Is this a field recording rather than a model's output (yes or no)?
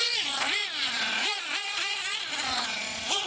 no